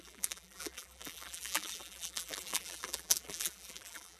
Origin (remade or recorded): remade